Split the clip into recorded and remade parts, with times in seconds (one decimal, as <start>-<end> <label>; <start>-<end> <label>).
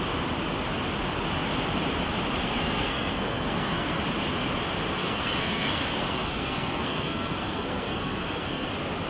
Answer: 0.0-2.4 recorded; 2.4-4.0 remade; 4.0-5.0 recorded; 5.0-8.7 remade; 8.7-9.1 recorded